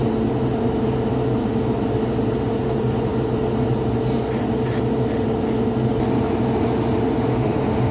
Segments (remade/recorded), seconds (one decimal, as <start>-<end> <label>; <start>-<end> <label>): 0.0-7.3 recorded; 7.3-7.9 remade